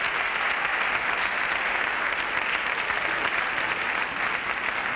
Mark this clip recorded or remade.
recorded